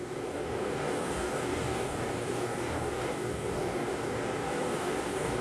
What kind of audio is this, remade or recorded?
remade